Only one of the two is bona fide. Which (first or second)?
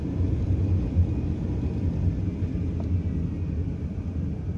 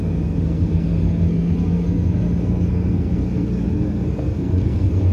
first